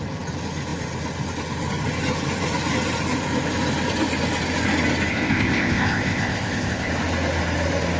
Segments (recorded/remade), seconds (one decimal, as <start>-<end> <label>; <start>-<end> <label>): 0.0-5.1 recorded; 5.1-6.9 remade; 6.9-8.0 recorded